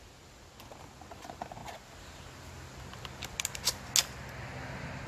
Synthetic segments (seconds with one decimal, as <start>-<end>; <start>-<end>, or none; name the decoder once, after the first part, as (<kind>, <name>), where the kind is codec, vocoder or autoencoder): none

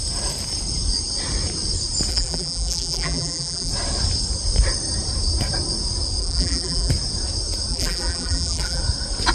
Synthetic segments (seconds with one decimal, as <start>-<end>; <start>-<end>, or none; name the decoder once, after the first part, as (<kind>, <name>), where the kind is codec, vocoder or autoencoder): 2.1-3.7 (vocoder, BigVGAN v2); 6.2-6.9; 7.7-8.8

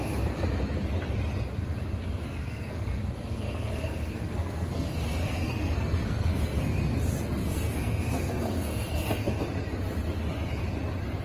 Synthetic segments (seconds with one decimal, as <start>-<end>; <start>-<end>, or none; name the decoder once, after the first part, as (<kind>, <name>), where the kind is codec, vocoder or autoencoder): 2.4-6.9 (codec, SNAC); 7.4-9.4

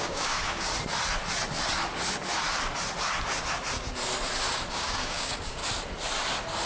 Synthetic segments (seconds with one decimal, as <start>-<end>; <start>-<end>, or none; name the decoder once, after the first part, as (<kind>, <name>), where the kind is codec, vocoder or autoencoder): 0.0-0.7 (codec, DAC); 4.7-5.6